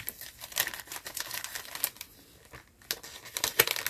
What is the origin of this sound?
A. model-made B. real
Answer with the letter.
B